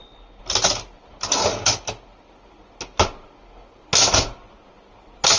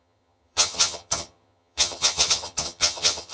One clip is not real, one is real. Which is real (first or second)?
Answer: first